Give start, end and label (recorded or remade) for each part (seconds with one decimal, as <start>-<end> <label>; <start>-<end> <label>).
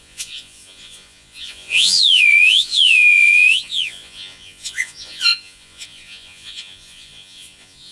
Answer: 0.0-7.9 remade